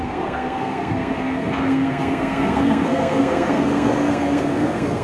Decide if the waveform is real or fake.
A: fake